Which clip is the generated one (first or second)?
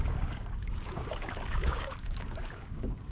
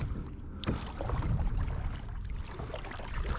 first